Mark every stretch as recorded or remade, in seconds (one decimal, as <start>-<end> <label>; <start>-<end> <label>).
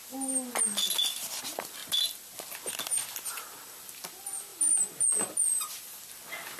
0.0-6.6 recorded